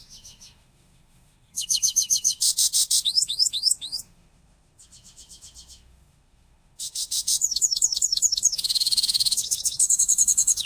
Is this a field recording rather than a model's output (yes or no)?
no